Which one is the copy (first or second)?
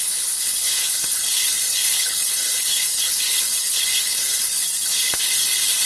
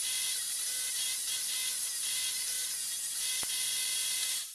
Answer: first